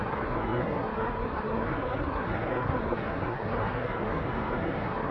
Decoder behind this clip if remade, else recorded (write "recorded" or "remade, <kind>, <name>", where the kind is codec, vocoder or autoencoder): remade, codec, SNAC